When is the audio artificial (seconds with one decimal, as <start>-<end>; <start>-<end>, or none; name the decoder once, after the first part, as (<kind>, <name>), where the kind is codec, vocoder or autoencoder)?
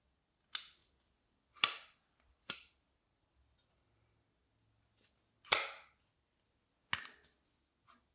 0.8-3.3 (vocoder, BigVGAN v2)